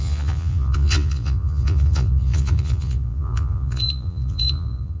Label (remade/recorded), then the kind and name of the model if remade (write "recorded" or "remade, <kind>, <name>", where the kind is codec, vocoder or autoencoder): remade, vocoder, Vocos